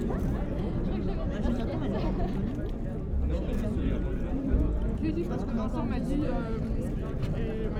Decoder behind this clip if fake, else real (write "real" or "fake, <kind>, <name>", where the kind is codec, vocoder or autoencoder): real